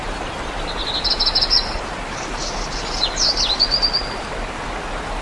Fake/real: real